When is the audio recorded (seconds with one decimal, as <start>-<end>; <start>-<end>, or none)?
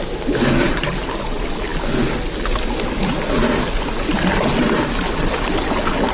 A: 0.0-6.1